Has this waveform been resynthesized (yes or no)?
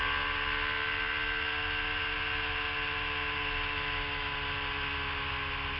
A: no